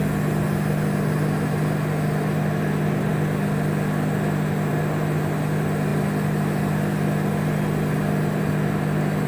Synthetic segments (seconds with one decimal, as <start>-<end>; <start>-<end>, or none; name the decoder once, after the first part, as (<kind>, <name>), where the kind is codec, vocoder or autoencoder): none